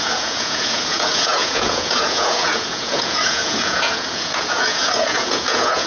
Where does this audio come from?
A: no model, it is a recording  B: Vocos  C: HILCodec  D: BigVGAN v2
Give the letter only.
B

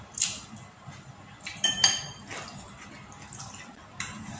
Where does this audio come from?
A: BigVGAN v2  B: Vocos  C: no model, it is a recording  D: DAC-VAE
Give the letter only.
C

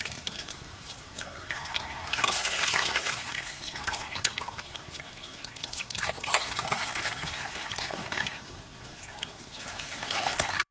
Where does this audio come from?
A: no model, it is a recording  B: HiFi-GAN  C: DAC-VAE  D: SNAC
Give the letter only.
D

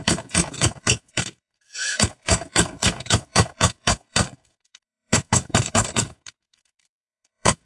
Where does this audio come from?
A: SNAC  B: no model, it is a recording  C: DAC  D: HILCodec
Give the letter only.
A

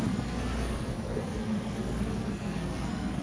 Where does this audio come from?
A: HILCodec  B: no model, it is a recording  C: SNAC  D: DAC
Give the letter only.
C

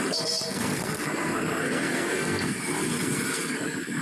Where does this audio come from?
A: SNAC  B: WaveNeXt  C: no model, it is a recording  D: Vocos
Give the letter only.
A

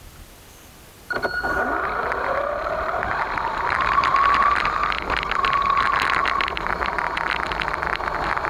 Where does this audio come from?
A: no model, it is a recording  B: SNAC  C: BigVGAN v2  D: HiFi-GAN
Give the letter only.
C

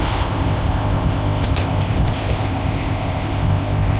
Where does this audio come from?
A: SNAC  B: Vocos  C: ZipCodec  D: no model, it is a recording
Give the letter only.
C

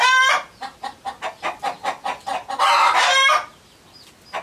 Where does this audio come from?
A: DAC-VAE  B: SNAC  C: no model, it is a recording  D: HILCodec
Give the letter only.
C